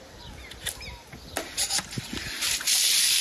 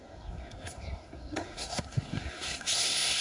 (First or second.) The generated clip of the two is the second